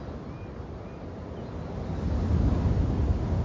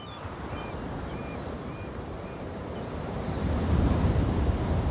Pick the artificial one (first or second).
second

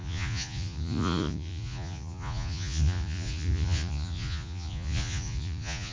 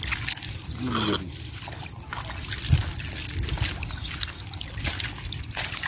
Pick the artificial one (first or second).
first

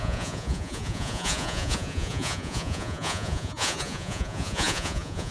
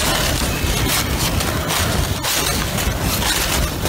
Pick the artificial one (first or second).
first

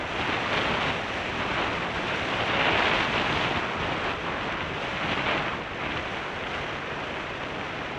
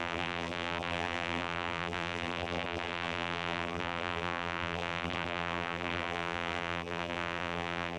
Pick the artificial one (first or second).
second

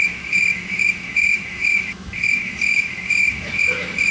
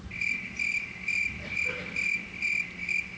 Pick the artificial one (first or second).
first